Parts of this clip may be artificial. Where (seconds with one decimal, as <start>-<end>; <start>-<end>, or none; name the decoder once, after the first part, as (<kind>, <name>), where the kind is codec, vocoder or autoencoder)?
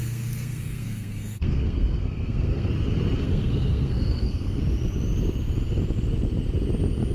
0.0-2.7 (codec, SNAC); 3.2-4.6